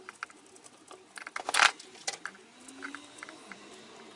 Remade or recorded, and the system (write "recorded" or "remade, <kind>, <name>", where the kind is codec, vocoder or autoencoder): recorded